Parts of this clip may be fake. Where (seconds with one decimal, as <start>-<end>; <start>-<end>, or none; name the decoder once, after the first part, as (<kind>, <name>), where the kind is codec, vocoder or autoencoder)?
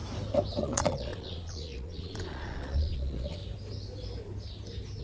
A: 0.6-3.4 (vocoder, Vocos)